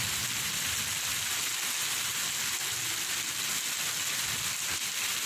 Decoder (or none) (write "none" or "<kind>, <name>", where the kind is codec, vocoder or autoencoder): none